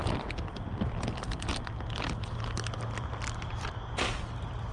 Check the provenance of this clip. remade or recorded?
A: recorded